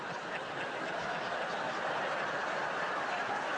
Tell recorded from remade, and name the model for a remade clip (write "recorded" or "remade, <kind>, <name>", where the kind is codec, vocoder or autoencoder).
recorded